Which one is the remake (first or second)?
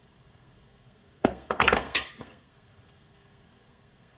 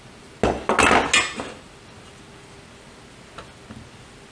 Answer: first